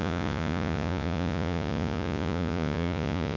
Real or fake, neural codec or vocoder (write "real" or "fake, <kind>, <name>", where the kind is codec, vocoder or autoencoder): fake, vocoder, Vocos